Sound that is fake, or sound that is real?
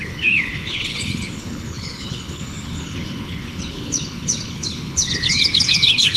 fake